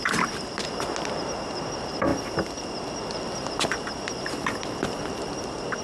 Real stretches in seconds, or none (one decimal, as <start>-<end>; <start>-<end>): 0.0-5.8